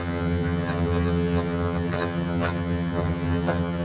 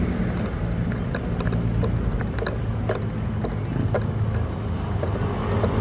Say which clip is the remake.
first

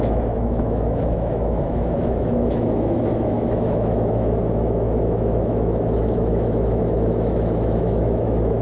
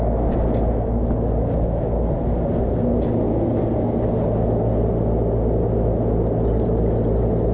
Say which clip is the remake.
first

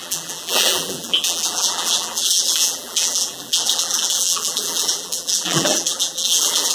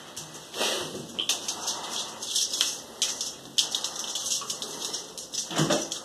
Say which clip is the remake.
first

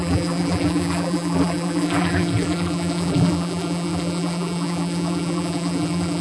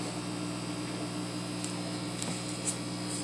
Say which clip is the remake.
first